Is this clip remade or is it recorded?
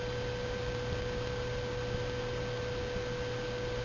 recorded